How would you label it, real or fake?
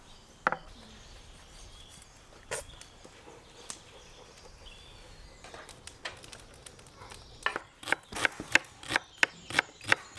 real